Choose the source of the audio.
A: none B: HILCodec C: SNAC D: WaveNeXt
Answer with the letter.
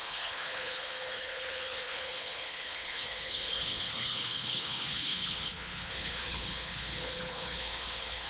B